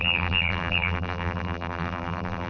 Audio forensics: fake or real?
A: fake